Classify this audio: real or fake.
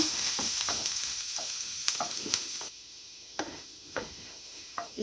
fake